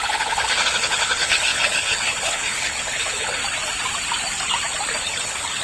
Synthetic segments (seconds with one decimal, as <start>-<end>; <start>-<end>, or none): 0.0-3.4; 5.0-5.6